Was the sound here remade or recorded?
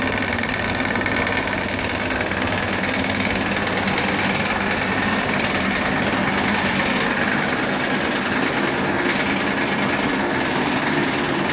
recorded